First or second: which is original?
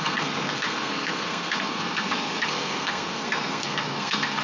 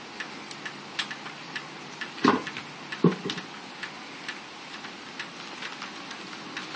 second